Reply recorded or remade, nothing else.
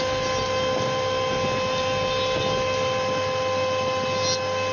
recorded